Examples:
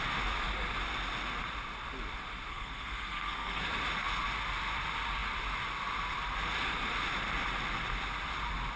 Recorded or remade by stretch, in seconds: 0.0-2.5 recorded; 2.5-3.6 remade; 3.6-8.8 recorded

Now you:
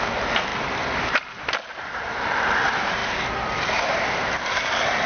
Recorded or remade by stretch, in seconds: 0.0-0.5 remade; 0.5-1.4 recorded; 1.4-3.0 remade; 3.0-3.8 recorded; 3.8-5.1 remade

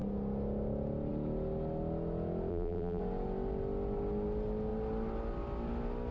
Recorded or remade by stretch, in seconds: 0.0-2.5 recorded; 2.5-3.0 remade; 3.0-6.1 recorded

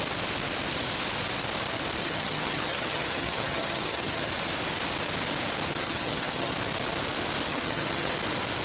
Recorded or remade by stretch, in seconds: 0.0-2.0 recorded; 2.0-4.3 remade; 4.3-5.8 recorded; 5.8-6.5 remade; 6.5-7.5 recorded; 7.5-8.1 remade; 8.1-8.6 recorded

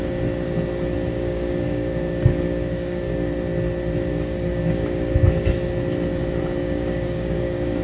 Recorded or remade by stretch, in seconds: 0.0-1.1 recorded; 1.1-3.3 remade; 3.3-4.1 recorded; 4.1-5.1 remade; 5.1-6.6 recorded; 6.6-7.8 remade